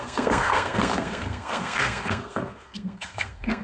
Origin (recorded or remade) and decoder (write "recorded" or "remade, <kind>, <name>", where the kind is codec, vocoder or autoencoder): remade, codec, SNAC